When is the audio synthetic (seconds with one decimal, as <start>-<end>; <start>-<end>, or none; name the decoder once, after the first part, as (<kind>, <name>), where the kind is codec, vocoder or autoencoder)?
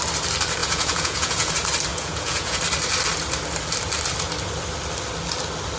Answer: 0.6-1.5 (vocoder, Vocos); 1.9-2.6